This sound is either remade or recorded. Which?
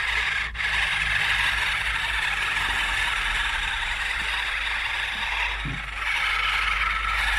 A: recorded